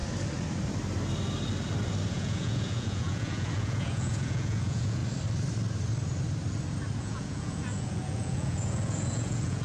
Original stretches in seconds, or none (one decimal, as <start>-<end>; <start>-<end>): 0.0-2.1; 5.0-7.0